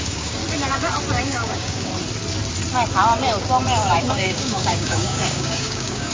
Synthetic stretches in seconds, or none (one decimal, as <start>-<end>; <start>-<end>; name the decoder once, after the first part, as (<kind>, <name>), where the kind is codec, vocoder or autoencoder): 0.0-0.4 (codec, DAC); 1.2-1.9; 3.9-6.1